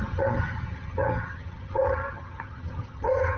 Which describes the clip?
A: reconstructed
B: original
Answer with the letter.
A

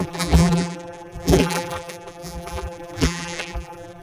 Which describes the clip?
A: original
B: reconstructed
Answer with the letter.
B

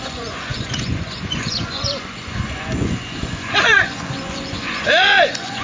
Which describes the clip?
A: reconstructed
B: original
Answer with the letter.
A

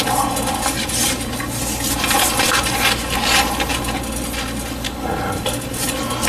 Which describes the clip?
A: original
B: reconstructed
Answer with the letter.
A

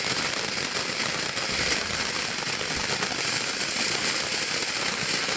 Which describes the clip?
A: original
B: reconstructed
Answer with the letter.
A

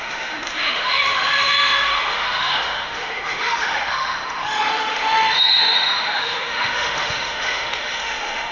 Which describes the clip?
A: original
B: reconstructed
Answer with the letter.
B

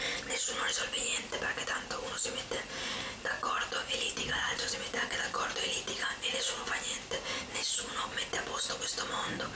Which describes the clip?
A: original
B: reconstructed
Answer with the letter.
A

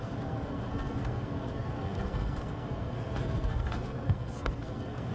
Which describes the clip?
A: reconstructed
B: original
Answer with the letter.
A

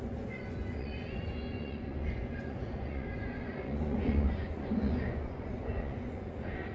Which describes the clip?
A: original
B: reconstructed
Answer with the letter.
B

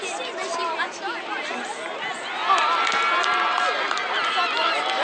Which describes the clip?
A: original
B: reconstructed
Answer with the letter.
A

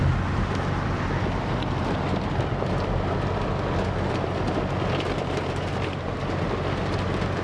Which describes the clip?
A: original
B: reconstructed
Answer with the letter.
A